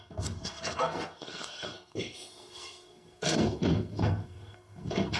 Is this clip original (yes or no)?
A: no